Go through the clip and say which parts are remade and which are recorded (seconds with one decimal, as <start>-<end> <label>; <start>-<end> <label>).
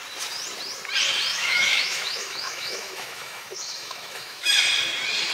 0.0-1.3 recorded; 1.3-4.5 remade; 4.5-5.3 recorded